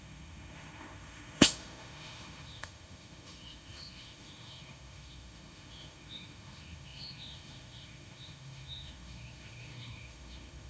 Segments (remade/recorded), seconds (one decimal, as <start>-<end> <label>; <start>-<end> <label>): 0.0-10.7 remade